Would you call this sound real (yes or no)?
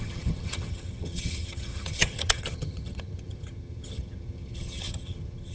no